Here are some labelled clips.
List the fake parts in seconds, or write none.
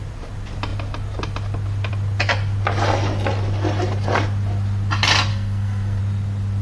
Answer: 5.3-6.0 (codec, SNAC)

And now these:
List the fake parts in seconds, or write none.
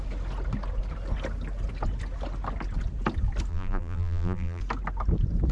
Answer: 3.5-4.6 (vocoder, BigVGAN v2)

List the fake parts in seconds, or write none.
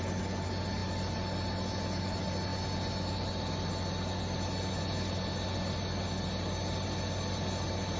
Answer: none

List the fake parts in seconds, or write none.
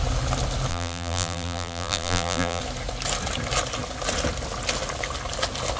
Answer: 0.7-2.6 (vocoder, BigVGAN v2)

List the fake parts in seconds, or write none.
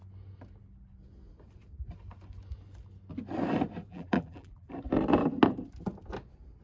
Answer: 3.9-4.7 (vocoder, BigVGAN v2)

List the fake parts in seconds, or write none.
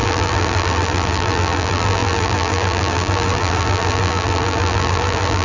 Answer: 0.0-5.4 (vocoder, BigVGAN v2)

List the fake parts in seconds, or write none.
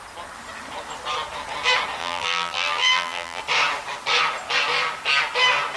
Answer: 2.0-3.4 (vocoder, BigVGAN v2)